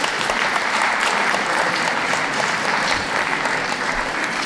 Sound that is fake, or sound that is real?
fake